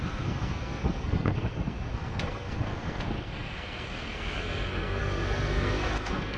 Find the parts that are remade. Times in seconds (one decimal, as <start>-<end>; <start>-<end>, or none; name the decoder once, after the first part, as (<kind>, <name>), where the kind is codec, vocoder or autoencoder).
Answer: 0.0-6.4 (codec, SNAC)